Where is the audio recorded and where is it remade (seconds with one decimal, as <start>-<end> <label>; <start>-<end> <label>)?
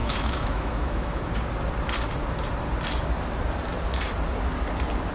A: 0.0-1.3 remade; 1.3-5.1 recorded